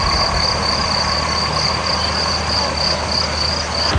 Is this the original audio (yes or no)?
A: yes